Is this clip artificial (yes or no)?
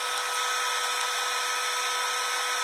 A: no